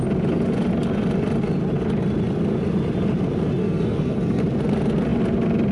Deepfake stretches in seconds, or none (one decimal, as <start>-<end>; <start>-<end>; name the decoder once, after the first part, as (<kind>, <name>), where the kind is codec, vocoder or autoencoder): 3.6-4.4 (codec, SNAC)